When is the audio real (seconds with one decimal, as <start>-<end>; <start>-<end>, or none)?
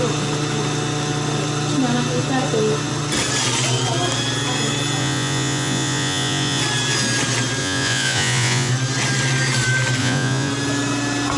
0.0-5.0; 6.6-7.6; 8.7-10.0; 10.5-11.4